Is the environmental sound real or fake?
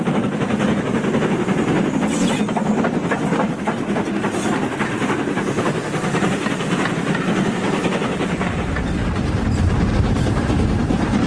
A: real